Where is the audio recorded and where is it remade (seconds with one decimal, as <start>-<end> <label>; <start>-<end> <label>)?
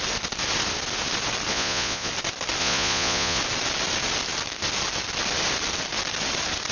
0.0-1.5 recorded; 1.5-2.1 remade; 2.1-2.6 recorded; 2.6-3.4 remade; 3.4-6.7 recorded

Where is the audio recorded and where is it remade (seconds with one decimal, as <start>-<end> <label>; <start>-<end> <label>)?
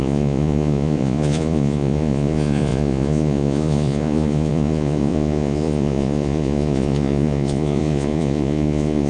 0.0-9.1 remade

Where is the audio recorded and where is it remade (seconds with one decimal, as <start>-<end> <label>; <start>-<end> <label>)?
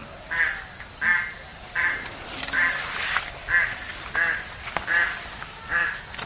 0.0-6.3 recorded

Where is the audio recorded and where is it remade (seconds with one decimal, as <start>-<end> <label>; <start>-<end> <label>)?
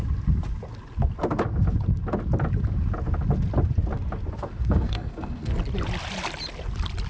0.0-4.6 recorded; 4.6-5.5 remade; 5.5-7.1 recorded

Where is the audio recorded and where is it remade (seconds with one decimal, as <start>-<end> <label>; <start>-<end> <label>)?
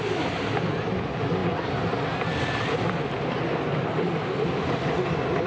0.0-5.5 recorded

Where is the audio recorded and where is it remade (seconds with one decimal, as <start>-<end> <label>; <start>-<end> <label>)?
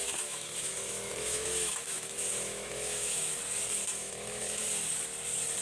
0.0-3.4 remade; 3.4-4.0 recorded; 4.0-4.6 remade; 4.6-5.6 recorded